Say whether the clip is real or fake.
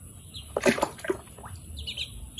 real